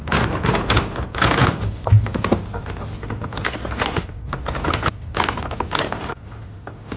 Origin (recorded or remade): recorded